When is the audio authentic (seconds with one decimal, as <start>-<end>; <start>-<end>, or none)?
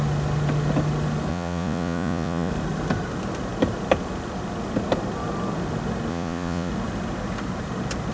0.0-1.3; 2.5-6.1; 6.7-8.1